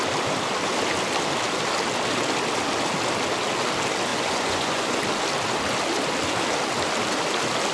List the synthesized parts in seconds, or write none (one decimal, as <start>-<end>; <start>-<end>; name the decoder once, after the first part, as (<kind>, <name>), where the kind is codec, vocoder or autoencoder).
4.1-5.0 (vocoder, Vocos)